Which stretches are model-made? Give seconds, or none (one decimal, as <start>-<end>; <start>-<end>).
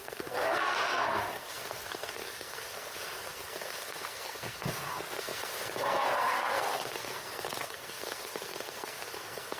0.0-9.6